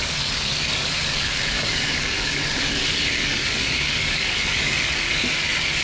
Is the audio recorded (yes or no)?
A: no